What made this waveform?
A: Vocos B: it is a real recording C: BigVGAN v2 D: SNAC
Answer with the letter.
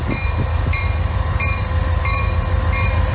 C